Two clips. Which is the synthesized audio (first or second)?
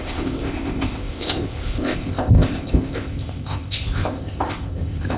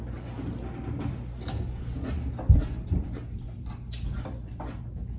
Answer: first